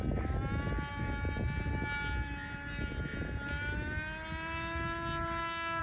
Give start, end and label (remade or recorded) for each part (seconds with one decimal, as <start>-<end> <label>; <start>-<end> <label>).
0.0-5.8 recorded